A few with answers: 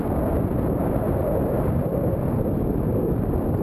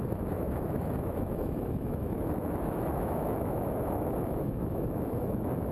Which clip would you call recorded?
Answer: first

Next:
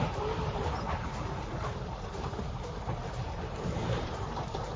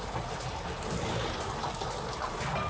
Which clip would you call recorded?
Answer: second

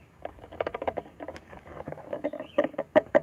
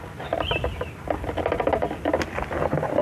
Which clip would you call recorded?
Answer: second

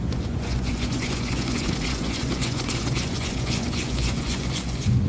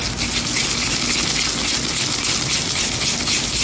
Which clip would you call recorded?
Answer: second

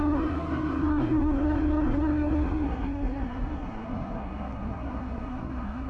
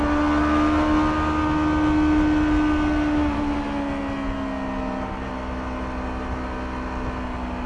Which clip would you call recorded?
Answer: second